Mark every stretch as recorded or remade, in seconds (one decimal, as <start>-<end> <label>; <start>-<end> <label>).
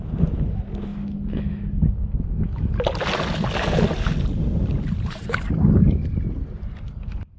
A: 0.0-0.9 recorded; 0.9-2.7 remade; 2.7-7.4 recorded